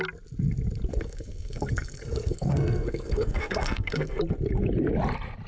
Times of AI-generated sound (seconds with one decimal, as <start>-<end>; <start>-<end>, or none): 0.9-4.2